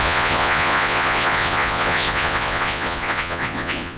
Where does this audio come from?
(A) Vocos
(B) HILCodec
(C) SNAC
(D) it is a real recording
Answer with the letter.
A